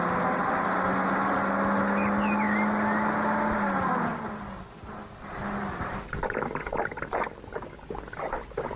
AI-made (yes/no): no